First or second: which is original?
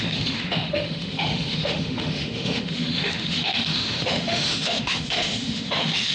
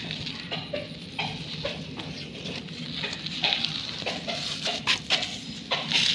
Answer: second